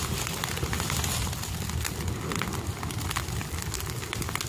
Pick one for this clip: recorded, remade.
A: recorded